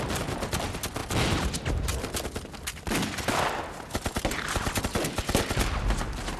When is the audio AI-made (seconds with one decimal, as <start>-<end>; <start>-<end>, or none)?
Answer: none